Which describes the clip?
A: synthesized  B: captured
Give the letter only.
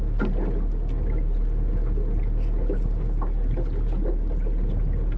B